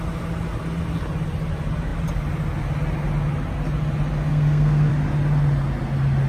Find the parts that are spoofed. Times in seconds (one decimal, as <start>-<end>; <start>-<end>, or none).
4.3-4.9